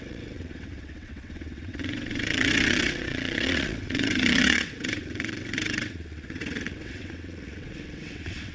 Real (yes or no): no